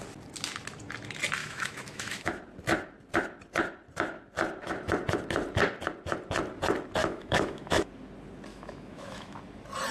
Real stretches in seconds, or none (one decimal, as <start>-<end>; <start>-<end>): 0.0-1.4; 2.4-7.0; 7.9-8.5; 9.4-9.9